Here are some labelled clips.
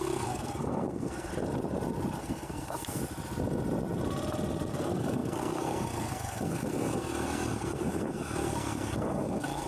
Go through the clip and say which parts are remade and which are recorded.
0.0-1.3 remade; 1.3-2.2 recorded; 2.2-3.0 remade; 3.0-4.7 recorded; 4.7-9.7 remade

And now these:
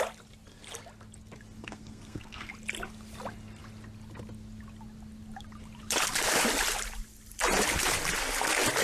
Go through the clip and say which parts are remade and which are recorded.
0.0-1.6 recorded; 1.6-2.5 remade; 2.5-8.8 recorded

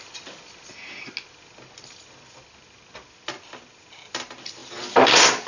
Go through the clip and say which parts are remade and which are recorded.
0.0-5.5 recorded

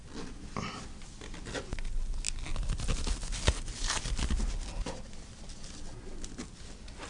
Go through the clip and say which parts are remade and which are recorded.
0.0-7.1 recorded

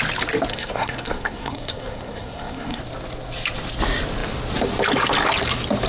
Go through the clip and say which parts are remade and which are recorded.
0.0-0.5 recorded; 0.5-2.8 remade; 2.8-5.9 recorded